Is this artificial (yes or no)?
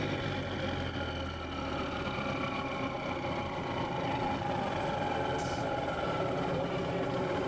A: no